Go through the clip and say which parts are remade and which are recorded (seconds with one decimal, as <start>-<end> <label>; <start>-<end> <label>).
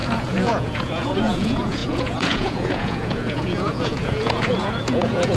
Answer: 0.0-5.4 remade